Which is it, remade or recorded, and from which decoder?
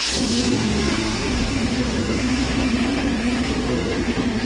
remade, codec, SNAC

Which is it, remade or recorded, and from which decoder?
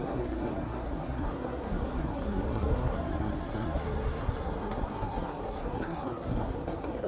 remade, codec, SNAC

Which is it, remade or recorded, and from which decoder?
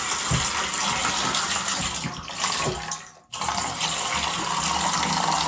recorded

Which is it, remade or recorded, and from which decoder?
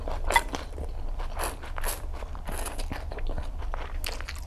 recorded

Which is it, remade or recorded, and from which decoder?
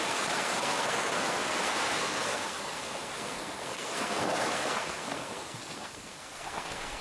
remade, codec, SNAC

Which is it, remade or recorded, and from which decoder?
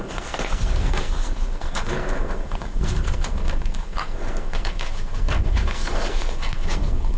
remade, codec, SNAC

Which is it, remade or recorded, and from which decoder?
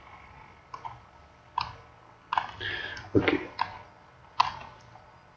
recorded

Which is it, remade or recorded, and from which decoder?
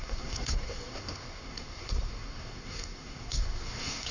remade, codec, SNAC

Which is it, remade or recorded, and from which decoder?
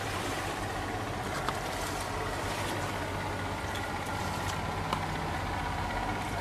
recorded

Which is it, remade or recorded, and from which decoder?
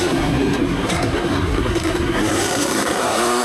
remade, codec, SNAC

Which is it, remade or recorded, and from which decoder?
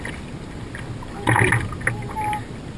recorded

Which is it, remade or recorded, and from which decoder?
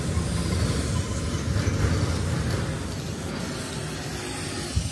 recorded